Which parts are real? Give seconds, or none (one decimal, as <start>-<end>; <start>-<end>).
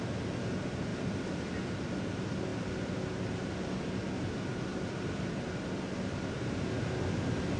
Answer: 0.0-0.9; 1.5-4.7; 5.4-7.6